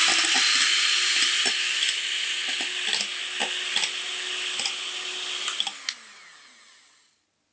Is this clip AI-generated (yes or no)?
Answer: no